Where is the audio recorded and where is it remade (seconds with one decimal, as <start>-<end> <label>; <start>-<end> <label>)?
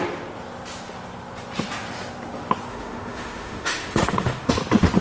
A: 0.0-2.7 recorded; 2.7-4.5 remade; 4.5-5.0 recorded